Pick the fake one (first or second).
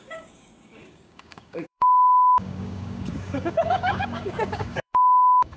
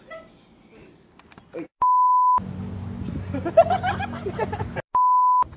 first